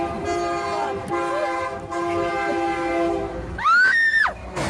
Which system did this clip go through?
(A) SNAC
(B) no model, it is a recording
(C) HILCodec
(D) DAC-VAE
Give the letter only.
B